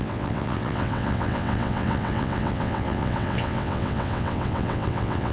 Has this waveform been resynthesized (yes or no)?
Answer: yes